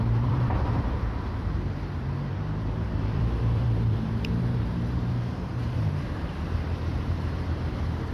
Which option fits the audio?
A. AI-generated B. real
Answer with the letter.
A